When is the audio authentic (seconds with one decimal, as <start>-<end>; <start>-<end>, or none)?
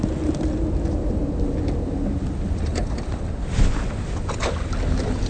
0.0-5.3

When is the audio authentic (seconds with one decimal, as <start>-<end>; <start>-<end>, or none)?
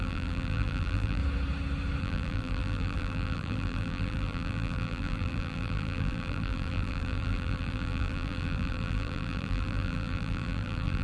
1.2-2.0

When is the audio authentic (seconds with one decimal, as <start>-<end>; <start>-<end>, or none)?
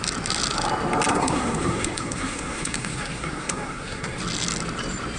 0.0-1.1; 4.2-5.2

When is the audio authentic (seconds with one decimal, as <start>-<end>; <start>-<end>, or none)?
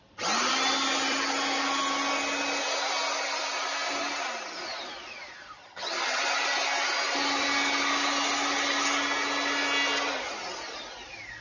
0.0-5.6; 6.2-11.4